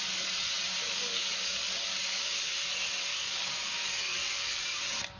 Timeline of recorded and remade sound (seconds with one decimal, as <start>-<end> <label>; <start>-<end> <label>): 0.0-0.8 recorded; 0.8-2.5 remade; 2.5-3.1 recorded; 3.1-4.8 remade; 4.8-5.2 recorded